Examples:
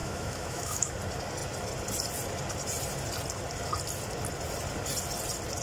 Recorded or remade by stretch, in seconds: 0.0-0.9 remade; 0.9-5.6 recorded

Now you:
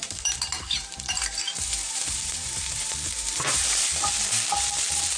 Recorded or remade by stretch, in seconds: 0.0-3.9 remade; 3.9-5.2 recorded